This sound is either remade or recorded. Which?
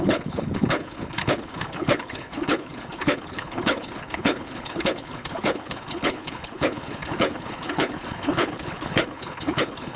remade